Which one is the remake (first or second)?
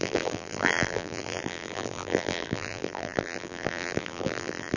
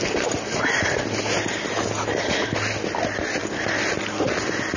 first